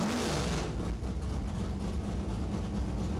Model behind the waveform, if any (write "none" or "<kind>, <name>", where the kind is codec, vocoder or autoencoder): none